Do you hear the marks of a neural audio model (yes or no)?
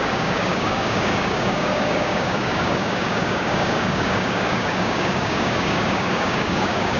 yes